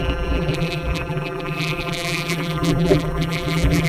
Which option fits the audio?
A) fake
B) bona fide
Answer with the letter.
A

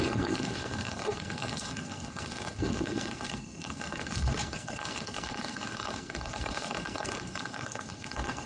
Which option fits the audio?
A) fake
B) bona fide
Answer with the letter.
A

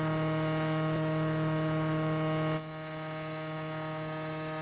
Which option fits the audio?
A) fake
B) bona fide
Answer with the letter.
B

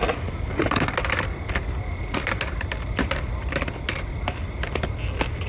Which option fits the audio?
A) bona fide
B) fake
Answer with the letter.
A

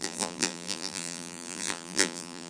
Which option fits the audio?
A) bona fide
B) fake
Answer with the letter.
B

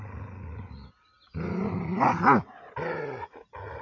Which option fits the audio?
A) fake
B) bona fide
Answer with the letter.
B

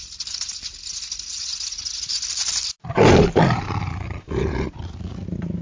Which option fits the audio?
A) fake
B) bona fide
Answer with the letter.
B